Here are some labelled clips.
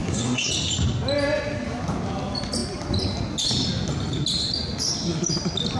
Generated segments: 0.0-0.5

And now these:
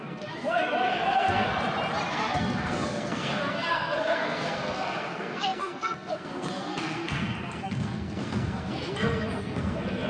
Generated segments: 0.0-1.5; 2.1-10.1

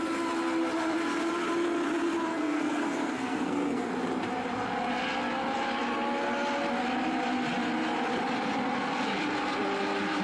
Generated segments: 2.3-3.9

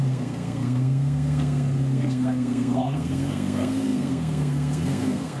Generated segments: 0.0-5.4

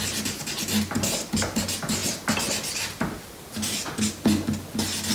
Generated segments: none

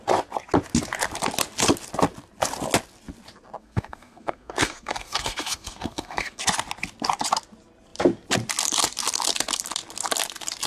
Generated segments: 3.6-6.4